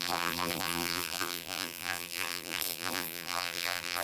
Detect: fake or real fake